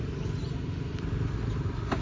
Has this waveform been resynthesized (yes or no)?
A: no